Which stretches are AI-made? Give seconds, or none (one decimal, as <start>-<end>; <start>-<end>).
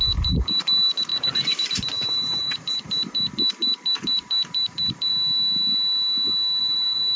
0.0-5.1; 6.6-7.2